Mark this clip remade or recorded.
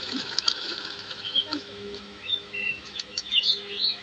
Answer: remade